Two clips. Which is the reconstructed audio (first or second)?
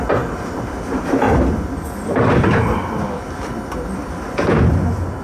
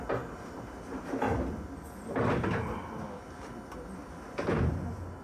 first